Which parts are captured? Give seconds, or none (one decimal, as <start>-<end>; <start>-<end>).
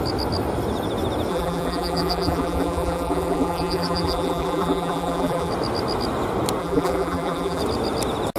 0.0-1.3; 5.5-6.6; 7.6-8.4